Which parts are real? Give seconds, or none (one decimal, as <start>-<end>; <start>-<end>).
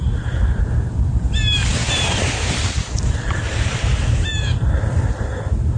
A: none